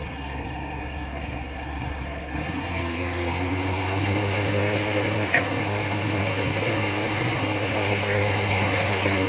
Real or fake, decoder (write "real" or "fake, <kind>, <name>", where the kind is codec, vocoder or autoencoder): fake, codec, SNAC